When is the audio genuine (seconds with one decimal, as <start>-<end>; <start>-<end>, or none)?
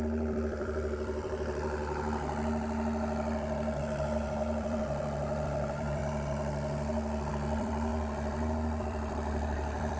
1.8-3.8; 6.0-7.3; 7.9-8.8